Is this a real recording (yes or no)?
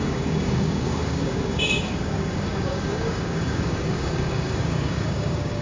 no